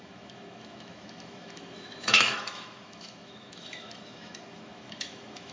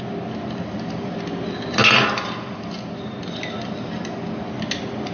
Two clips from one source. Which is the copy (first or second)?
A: first